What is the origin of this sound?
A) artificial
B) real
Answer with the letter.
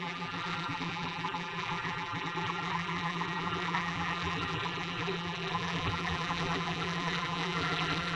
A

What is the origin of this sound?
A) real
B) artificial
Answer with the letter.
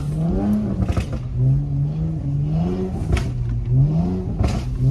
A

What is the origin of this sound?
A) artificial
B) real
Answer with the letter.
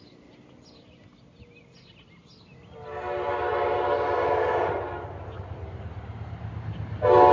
B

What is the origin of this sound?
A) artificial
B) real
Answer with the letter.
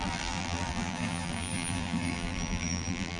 A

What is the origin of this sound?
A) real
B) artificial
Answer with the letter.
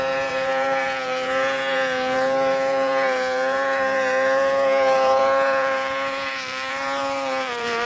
B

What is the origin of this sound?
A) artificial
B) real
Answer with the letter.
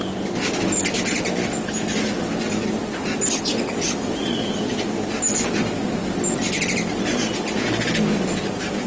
A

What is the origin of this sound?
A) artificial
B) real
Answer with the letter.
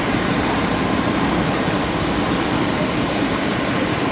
A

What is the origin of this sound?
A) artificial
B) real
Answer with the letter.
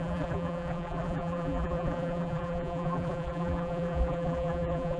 A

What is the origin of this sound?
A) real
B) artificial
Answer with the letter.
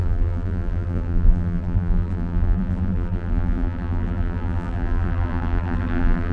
B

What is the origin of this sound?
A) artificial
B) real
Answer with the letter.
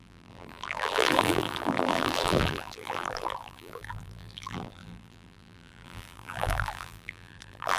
A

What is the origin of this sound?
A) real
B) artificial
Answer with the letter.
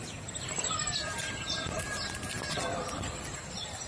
B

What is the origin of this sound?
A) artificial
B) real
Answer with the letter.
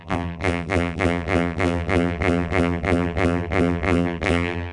A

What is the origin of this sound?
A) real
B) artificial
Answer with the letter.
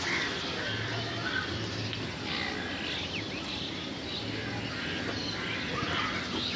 A